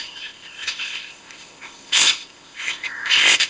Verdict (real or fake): fake